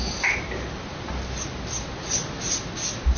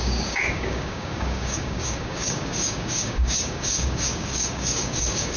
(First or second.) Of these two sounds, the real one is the first